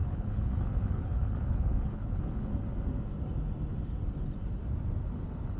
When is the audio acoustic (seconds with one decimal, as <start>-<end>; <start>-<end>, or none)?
2.2-5.6